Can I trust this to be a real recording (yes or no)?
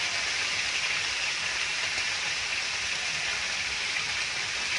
yes